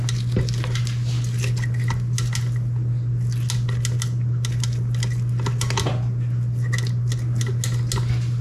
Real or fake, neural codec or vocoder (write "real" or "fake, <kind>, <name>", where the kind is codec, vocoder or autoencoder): real